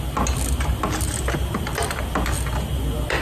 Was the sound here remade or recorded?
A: recorded